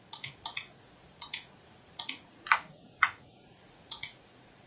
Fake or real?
fake